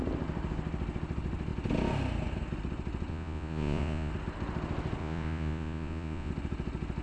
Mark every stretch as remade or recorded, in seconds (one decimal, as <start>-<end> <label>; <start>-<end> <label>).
0.0-3.1 recorded; 3.1-4.1 remade; 4.1-5.0 recorded; 5.0-6.3 remade; 6.3-7.0 recorded